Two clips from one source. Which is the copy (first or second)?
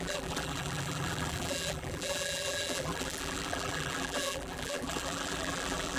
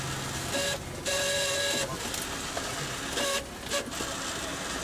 first